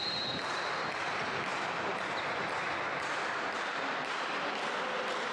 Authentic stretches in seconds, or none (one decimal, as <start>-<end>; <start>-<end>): none